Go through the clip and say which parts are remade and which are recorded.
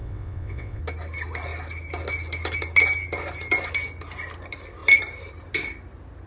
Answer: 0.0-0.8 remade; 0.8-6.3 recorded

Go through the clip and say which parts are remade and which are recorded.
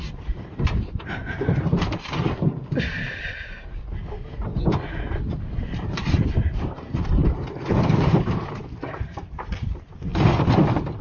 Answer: 0.0-1.2 remade; 1.2-5.5 recorded; 5.5-10.1 remade; 10.1-11.0 recorded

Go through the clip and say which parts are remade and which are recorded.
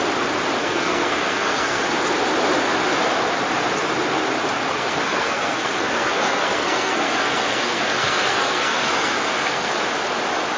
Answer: 0.0-0.6 recorded; 0.6-1.8 remade; 1.8-4.7 recorded; 4.7-9.8 remade; 9.8-10.6 recorded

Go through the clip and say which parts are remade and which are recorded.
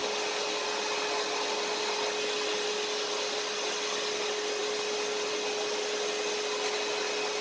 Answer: 0.0-7.4 recorded